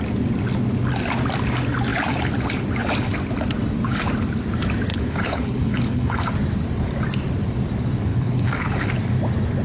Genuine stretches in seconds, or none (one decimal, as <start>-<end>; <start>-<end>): 0.0-4.9; 6.3-8.1; 8.9-9.6